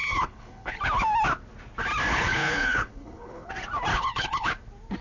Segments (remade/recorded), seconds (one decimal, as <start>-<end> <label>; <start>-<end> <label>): 0.0-0.8 remade; 0.8-2.1 recorded; 2.1-3.5 remade; 3.5-3.9 recorded; 3.9-4.5 remade; 4.5-5.0 recorded